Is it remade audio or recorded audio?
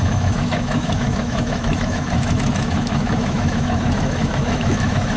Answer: remade